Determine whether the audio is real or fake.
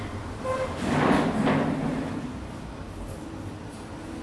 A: real